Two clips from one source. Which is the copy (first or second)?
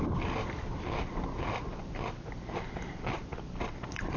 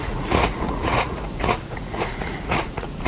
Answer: second